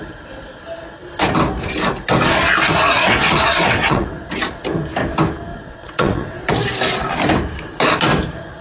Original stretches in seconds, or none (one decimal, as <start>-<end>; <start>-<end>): 0.0-3.0; 4.3-5.5; 6.5-8.6